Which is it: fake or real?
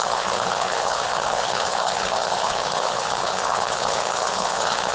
fake